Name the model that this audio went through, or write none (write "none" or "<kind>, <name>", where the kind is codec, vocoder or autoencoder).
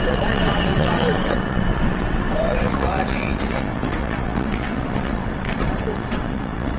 vocoder, WaveNeXt